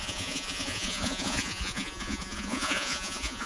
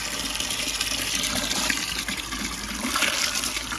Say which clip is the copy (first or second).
first